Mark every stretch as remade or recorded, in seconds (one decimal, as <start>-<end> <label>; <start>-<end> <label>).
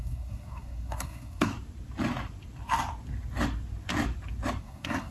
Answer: 0.0-1.5 remade; 1.5-4.6 recorded; 4.6-5.1 remade